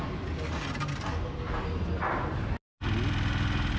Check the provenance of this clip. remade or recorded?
recorded